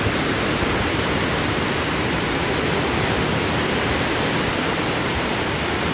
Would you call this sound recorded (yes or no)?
yes